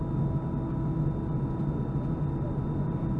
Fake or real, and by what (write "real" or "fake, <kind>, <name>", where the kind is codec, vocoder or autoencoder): real